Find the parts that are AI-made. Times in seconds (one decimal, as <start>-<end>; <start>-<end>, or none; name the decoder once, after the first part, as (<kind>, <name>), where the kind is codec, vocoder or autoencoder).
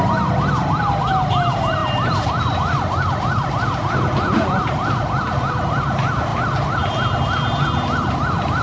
none